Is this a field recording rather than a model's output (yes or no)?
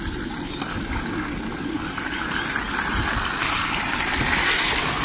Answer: yes